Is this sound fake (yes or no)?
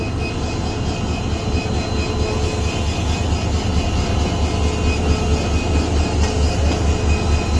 no